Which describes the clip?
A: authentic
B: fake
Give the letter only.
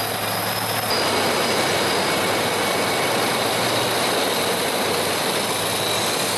A